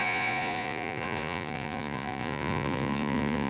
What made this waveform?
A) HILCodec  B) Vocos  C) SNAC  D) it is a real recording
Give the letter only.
B